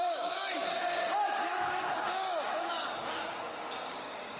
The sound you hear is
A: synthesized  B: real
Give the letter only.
A